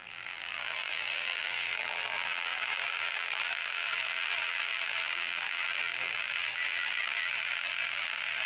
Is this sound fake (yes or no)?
yes